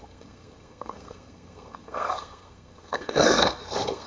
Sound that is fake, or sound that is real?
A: fake